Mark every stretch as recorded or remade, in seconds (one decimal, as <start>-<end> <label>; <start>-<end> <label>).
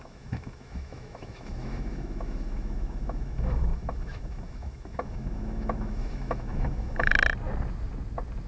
0.0-7.1 remade; 7.1-8.5 recorded